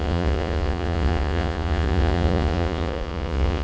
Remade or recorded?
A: remade